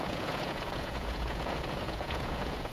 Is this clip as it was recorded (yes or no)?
no